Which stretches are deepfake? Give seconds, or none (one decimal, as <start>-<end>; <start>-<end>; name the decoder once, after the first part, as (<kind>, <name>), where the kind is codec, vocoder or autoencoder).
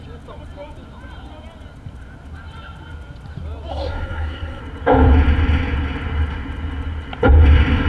3.7-4.6 (codec, SNAC)